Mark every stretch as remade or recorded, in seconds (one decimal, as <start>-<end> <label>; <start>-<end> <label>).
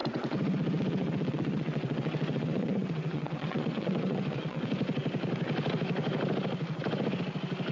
0.0-4.6 remade; 4.6-7.7 recorded